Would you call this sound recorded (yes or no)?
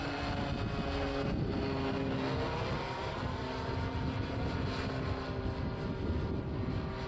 yes